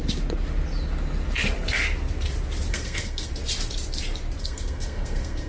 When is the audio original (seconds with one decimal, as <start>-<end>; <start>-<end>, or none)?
0.0-2.7; 3.3-4.4